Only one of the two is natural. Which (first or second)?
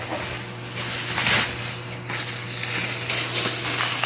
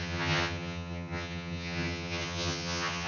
first